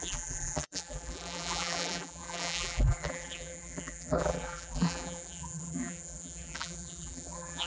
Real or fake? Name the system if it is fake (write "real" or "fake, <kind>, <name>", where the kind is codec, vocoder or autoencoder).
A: fake, vocoder, BigVGAN v2